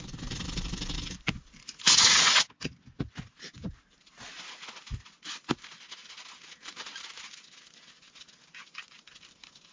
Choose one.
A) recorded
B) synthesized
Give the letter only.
A